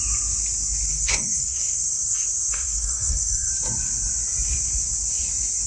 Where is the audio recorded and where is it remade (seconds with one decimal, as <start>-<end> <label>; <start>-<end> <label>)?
0.0-0.9 recorded; 0.9-3.5 remade; 3.5-5.7 recorded